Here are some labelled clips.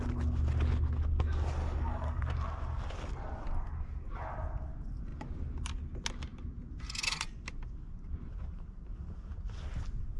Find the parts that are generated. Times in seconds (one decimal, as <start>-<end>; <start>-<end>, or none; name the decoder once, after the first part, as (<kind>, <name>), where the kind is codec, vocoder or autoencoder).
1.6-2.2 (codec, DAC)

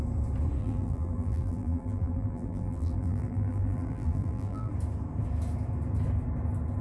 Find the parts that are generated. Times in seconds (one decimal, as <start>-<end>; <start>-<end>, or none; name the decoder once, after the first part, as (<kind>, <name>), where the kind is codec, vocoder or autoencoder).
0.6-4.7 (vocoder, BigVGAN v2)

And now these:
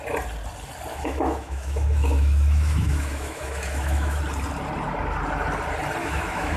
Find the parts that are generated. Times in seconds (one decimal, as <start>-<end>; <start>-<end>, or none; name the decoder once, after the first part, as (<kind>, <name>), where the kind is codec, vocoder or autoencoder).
0.9-4.2 (autoencoder, DAC-VAE); 6.0-6.6

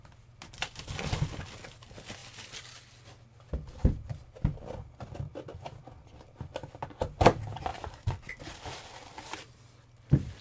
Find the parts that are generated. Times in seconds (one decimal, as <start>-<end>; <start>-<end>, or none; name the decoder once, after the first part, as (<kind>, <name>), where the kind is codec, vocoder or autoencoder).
7.7-8.3 (vocoder, BigVGAN v2)

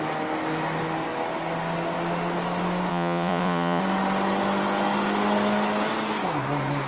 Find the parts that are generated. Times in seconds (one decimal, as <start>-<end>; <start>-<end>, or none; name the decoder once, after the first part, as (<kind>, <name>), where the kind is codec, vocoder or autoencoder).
2.9-3.8 (vocoder, Vocos)

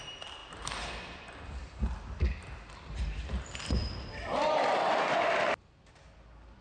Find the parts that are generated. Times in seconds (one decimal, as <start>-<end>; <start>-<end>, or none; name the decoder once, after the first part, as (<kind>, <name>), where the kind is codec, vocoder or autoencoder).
none

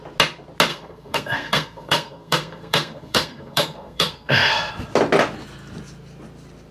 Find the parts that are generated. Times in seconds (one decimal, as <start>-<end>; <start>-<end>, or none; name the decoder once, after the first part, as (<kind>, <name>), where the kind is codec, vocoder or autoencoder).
0.7-4.7 (codec, SNAC)